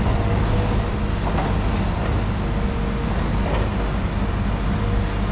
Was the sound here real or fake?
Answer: real